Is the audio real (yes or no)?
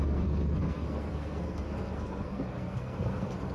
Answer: no